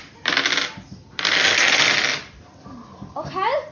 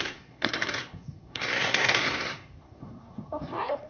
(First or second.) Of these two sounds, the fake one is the second